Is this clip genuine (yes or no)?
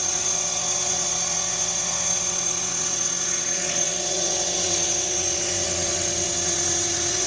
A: no